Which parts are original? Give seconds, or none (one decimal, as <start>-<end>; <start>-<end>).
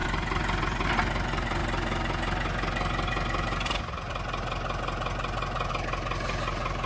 0.0-6.9